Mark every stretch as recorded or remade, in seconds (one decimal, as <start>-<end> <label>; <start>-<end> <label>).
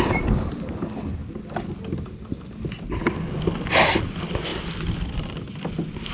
0.0-6.1 recorded